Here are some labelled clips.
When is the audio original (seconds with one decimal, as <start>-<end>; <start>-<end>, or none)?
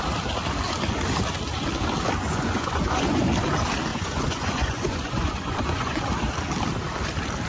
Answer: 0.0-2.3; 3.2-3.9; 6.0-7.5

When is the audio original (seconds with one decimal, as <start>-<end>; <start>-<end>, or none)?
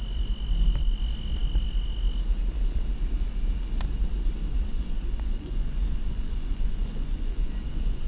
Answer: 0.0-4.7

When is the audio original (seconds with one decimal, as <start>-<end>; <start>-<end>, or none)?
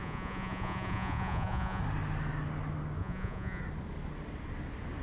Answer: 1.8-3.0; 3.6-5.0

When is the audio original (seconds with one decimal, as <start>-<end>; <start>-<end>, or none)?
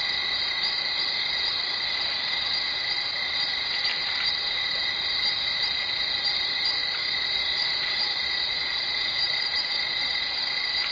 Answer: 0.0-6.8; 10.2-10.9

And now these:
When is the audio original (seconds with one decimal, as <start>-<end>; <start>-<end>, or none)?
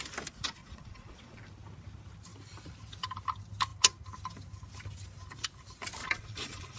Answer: 0.0-0.6; 1.4-6.0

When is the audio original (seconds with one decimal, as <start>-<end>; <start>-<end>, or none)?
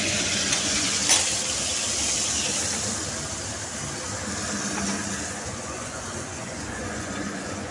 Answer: 1.0-5.3